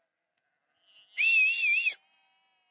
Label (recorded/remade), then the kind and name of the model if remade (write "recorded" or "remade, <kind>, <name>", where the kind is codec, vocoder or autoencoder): recorded